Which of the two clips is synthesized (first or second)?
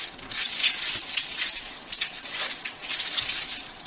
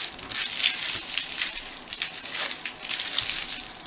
first